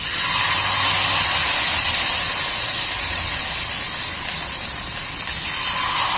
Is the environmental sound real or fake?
real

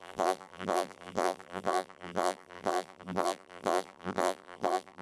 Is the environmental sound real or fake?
fake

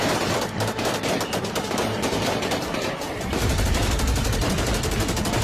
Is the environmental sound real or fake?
fake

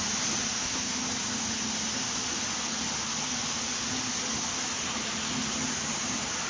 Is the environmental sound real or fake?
real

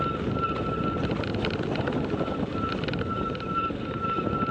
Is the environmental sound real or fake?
real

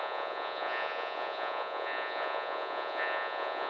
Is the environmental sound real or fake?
fake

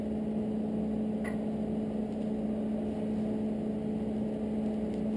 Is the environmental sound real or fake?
real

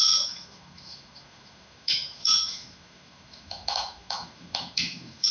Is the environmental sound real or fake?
fake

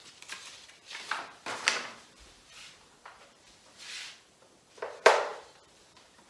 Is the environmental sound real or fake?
fake